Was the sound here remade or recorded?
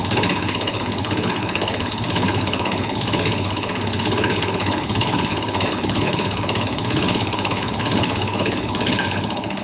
remade